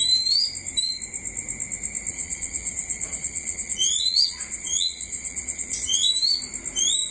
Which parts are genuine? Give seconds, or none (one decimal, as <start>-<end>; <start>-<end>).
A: 0.0-2.1; 6.1-7.1